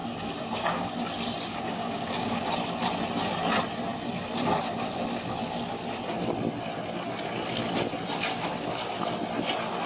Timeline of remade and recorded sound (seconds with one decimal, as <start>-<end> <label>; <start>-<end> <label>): 0.0-0.9 remade; 0.9-1.5 recorded; 1.5-2.4 remade; 2.4-8.3 recorded; 8.3-8.9 remade; 8.9-9.9 recorded